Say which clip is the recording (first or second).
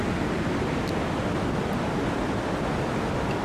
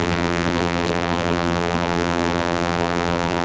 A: first